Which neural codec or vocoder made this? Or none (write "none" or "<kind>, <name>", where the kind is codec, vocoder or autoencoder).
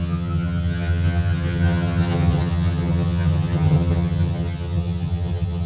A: vocoder, HiFi-GAN